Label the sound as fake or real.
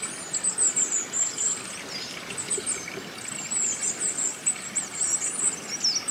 real